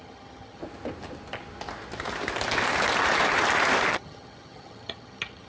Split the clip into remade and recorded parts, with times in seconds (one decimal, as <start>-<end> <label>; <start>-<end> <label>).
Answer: 0.0-0.6 remade; 0.6-3.9 recorded; 3.9-5.5 remade